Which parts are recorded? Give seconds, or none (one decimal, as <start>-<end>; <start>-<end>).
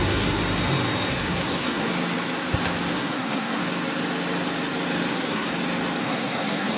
0.4-1.1; 1.9-2.9; 3.6-5.1; 5.5-6.0